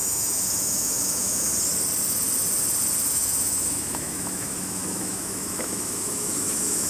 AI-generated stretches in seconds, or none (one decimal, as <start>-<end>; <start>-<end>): 0.0-1.5; 3.1-6.9

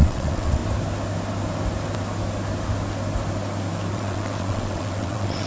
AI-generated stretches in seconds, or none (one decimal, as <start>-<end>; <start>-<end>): 0.0-0.6; 3.9-5.5

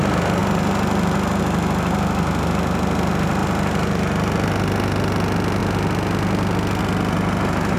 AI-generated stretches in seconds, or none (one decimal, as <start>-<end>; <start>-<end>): none

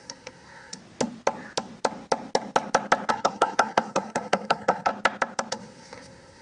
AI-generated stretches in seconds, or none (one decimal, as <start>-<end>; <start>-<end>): 0.0-0.8; 3.1-4.9; 5.5-6.4

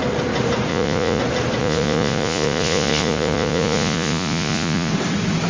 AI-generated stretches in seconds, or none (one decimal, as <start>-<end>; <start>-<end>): 0.7-1.2; 1.6-4.9

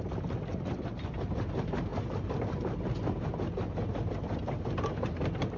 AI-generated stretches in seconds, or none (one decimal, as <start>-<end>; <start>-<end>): none

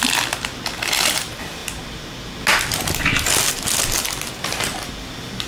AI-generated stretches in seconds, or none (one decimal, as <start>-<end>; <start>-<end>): none

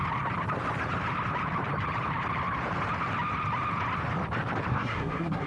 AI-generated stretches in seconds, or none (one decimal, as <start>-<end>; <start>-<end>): 4.7-5.5